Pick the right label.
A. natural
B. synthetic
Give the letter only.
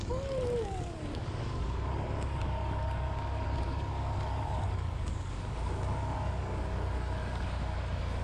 B